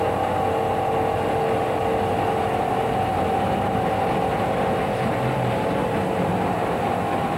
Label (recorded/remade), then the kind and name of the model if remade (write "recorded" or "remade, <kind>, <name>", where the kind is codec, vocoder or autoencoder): recorded